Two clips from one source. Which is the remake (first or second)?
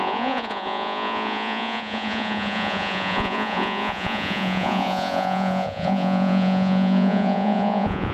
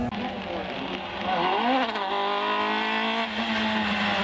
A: first